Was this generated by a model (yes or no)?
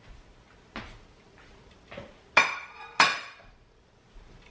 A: no